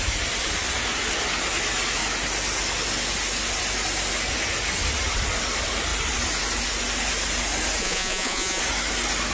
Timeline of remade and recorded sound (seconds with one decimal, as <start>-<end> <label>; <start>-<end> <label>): 0.0-7.8 recorded; 7.8-8.6 remade; 8.6-9.3 recorded